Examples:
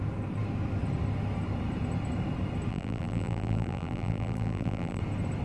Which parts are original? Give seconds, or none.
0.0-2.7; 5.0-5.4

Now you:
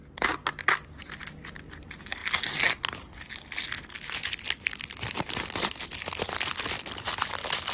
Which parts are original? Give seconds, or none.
0.0-7.7